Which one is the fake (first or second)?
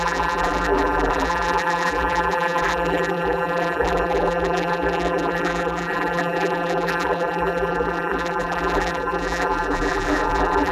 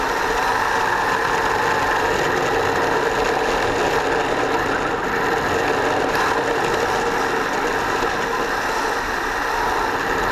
first